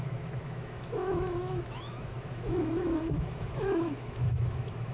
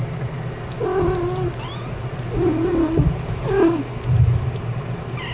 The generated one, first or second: first